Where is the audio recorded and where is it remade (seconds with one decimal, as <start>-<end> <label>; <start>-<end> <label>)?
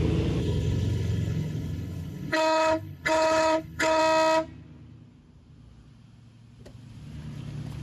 0.0-0.4 recorded; 0.4-4.0 remade; 4.0-7.8 recorded